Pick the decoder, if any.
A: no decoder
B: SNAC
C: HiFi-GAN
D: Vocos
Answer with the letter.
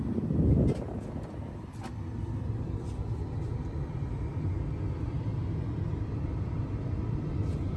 A